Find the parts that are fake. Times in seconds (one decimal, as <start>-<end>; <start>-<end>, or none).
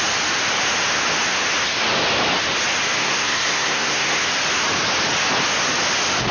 3.0-4.2